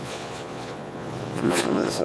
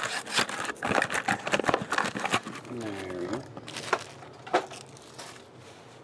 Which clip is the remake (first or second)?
first